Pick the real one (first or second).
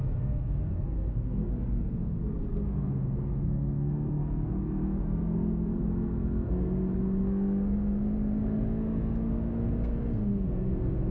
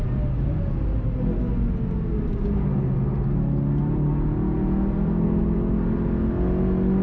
second